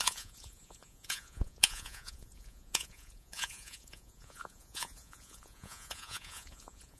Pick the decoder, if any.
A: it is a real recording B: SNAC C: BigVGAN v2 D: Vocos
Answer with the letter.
D